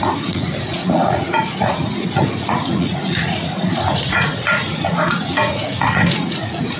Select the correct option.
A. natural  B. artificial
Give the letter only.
B